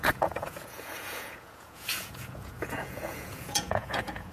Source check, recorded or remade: remade